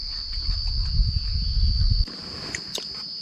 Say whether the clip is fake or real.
real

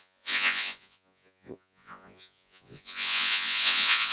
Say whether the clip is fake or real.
fake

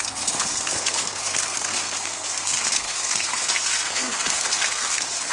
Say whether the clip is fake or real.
fake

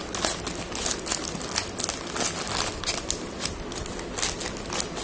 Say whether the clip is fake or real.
real